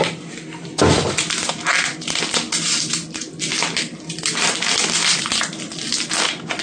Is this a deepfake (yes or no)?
no